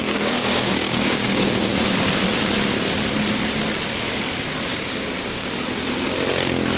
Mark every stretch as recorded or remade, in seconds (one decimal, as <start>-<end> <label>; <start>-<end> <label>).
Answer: 0.0-2.1 remade; 2.1-4.7 recorded; 4.7-5.5 remade; 5.5-6.8 recorded